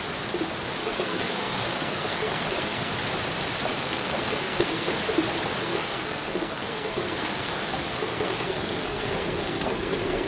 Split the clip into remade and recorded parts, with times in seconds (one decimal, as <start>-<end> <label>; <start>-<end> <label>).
0.0-0.8 recorded; 0.8-2.9 remade; 2.9-3.7 recorded; 3.7-4.9 remade; 4.9-5.6 recorded; 5.6-10.3 remade